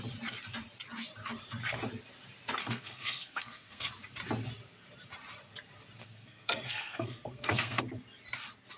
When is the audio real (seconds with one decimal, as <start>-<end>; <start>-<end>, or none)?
0.0-2.6; 3.9-6.0; 7.8-8.8